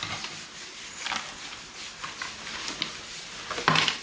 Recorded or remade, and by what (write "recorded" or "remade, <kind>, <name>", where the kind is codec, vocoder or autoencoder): recorded